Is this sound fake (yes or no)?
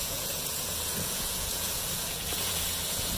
yes